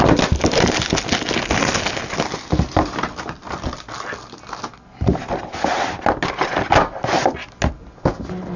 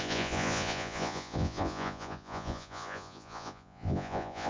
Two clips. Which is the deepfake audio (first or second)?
second